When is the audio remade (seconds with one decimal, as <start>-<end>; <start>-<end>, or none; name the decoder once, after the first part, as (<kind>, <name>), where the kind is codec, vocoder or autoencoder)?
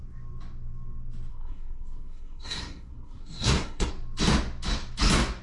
1.3-3.9 (codec, SNAC)